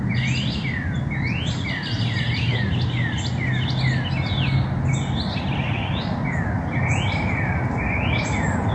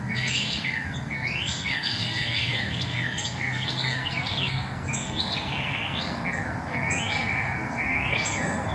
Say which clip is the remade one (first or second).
second